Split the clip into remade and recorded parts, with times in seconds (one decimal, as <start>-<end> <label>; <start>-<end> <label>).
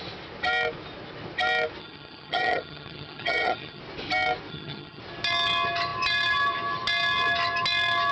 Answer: 0.0-1.8 recorded; 1.8-3.8 remade; 3.8-4.5 recorded; 4.5-5.0 remade; 5.0-8.1 recorded